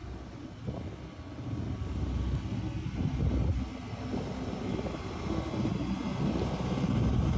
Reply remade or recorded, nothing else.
recorded